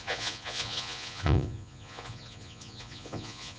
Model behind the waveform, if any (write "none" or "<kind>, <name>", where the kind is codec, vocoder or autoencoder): vocoder, Vocos